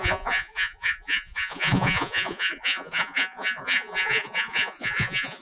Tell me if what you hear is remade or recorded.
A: remade